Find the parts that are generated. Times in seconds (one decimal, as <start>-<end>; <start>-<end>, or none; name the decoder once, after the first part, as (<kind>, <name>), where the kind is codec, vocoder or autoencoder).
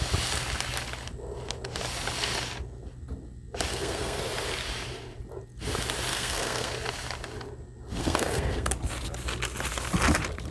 3.7-4.2 (codec, SNAC); 6.1-6.7; 8.0-8.7